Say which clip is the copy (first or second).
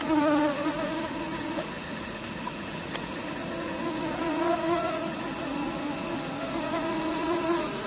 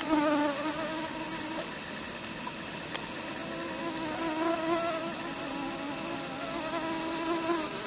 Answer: first